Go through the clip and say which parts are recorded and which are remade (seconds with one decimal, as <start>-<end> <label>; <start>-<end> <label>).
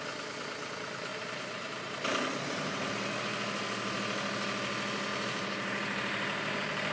0.0-1.1 recorded; 1.1-2.9 remade; 2.9-5.1 recorded; 5.1-6.9 remade